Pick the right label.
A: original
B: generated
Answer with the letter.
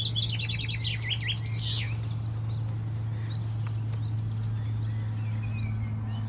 A